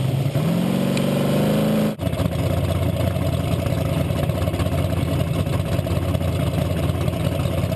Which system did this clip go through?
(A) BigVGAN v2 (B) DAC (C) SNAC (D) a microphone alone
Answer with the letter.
D